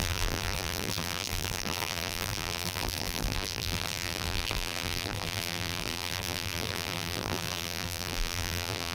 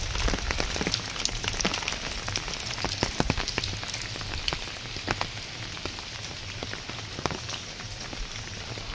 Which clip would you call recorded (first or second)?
second